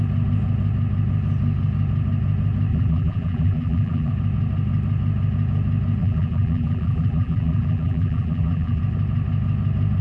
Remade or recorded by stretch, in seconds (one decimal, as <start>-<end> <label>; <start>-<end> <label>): 0.0-2.7 recorded; 2.7-4.1 remade; 4.1-6.0 recorded; 6.0-8.8 remade; 8.8-10.0 recorded